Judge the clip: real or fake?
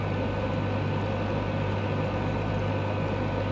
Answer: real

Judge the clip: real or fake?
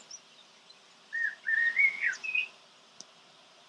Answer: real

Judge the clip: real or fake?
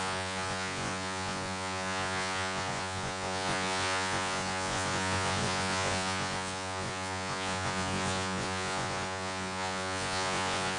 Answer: fake